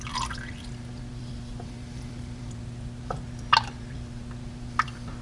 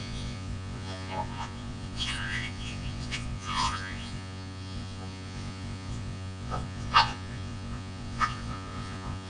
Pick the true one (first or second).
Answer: first